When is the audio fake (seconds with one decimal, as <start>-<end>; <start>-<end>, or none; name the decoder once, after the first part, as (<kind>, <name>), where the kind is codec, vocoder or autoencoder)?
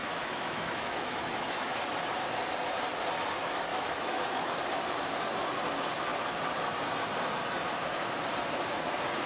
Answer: 0.0-1.7 (autoencoder, DAC-VAE); 3.7-4.6